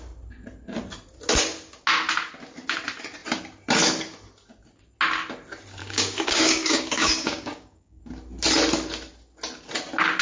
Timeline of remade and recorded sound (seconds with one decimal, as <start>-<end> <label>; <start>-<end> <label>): 0.0-5.8 recorded; 5.8-8.0 remade; 8.0-10.2 recorded